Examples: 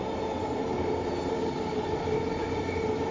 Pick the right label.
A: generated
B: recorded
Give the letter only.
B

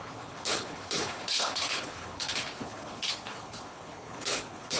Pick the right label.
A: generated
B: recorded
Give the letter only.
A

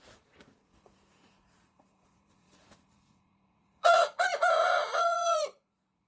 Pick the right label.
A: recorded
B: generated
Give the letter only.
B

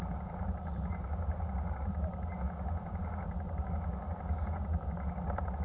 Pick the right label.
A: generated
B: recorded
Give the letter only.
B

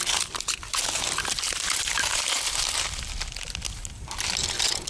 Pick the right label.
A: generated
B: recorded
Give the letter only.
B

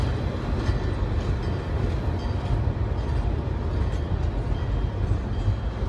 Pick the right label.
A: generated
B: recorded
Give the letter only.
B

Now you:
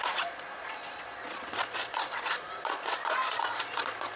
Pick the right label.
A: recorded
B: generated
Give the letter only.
B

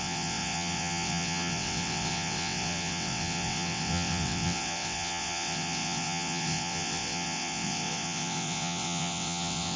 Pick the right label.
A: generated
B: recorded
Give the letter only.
A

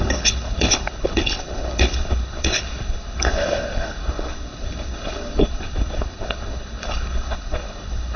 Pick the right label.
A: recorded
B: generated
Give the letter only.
B